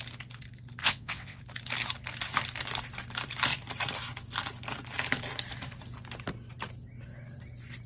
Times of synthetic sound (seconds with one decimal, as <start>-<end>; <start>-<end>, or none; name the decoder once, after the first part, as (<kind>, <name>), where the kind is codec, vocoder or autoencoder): 0.8-1.4 (vocoder, WaveNeXt)